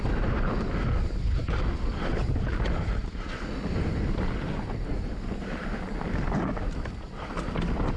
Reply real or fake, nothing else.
real